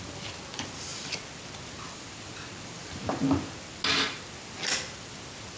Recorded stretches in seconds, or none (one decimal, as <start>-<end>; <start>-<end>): 0.0-5.6